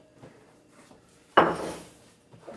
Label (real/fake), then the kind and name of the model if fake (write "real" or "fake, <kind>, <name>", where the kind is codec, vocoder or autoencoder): fake, vocoder, BigVGAN v2